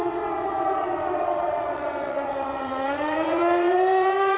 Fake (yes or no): yes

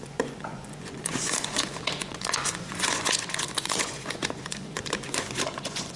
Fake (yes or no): yes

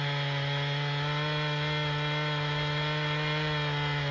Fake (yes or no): no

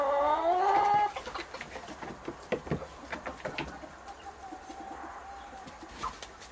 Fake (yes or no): no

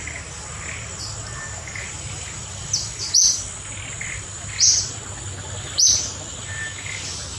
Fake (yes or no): no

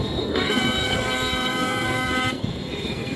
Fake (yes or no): yes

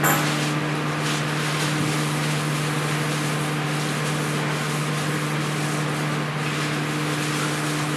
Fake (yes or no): no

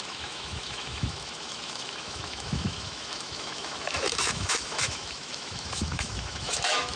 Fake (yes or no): yes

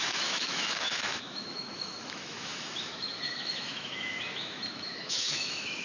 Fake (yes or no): yes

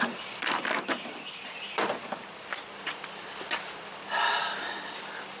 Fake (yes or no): no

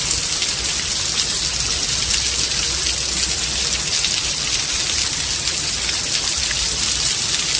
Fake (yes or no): no